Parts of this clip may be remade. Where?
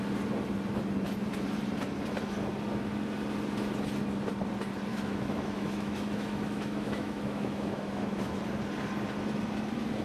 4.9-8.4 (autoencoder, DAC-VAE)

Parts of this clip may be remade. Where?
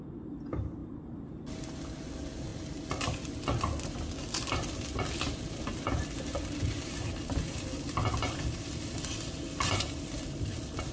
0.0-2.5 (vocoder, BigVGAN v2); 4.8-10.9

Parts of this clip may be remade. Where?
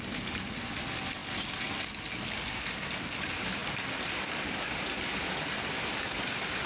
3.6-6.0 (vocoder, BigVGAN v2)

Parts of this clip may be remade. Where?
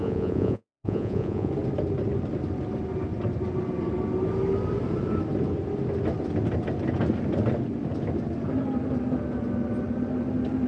0.0-1.5 (vocoder, Vocos)